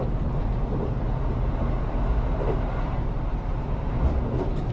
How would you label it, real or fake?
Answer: real